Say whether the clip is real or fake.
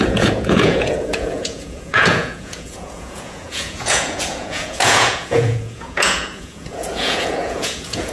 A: fake